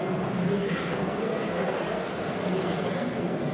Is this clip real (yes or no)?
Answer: no